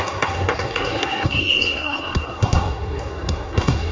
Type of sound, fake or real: fake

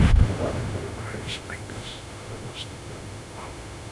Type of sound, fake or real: fake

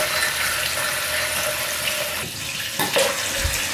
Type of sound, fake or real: real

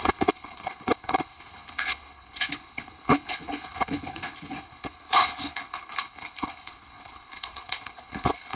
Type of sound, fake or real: fake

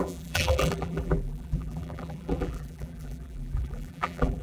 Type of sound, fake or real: fake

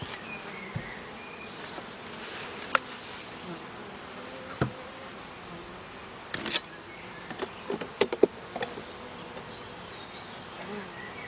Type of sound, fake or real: real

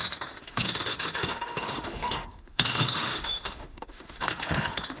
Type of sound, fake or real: fake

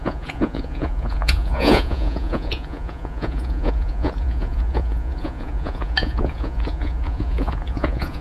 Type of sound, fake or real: fake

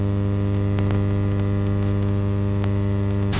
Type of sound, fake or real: real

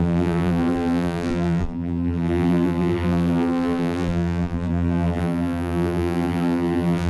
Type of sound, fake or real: fake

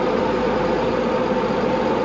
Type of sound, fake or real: real